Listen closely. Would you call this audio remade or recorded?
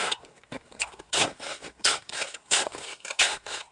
remade